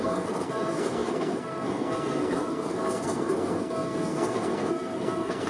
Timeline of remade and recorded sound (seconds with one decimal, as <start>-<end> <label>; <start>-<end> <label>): 0.0-5.5 remade